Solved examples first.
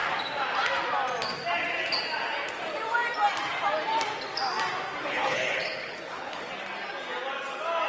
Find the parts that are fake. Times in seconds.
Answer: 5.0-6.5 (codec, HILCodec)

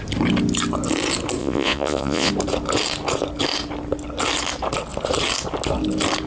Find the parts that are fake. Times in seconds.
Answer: 1.4-2.3 (vocoder, Vocos)

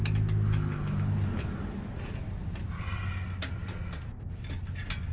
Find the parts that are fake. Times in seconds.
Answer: none

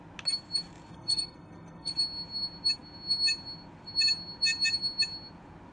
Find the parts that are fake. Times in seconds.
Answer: 0.9-1.9 (codec, SNAC)

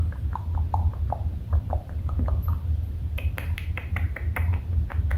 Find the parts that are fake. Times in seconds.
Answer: 1.2-4.3 (vocoder, BigVGAN v2)